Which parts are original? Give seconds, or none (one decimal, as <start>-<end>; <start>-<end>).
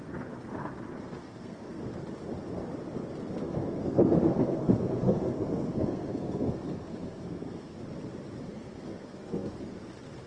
0.0-1.2; 1.8-3.4; 7.8-8.5; 9.6-10.3